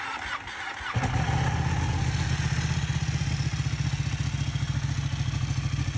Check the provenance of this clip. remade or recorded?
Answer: recorded